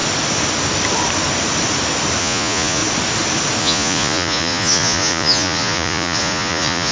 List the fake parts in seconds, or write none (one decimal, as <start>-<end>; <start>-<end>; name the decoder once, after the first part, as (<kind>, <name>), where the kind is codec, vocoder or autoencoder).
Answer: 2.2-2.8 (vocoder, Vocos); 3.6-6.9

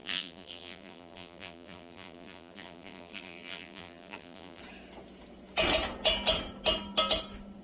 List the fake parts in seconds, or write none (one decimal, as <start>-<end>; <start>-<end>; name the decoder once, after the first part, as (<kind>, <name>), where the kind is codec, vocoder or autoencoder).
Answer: 0.0-4.6 (vocoder, BigVGAN v2)

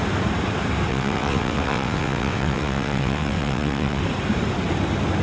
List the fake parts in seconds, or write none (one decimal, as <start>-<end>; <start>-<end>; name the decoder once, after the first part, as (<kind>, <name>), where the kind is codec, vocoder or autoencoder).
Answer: 0.9-4.0 (vocoder, WaveNeXt)

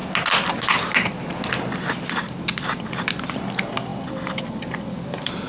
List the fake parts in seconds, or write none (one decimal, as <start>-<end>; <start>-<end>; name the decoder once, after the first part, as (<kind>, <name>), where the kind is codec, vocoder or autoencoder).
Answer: none